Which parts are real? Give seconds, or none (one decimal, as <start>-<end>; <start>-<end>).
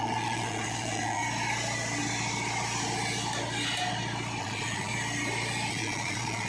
1.2-4.4; 4.9-5.7